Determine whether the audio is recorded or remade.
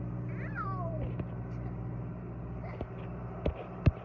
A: recorded